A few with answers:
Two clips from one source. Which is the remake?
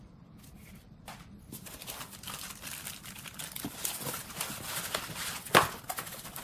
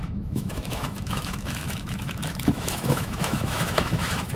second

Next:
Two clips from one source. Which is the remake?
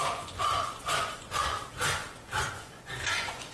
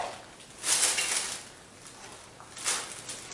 first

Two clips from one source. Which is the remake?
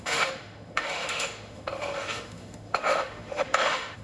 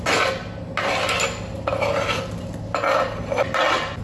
first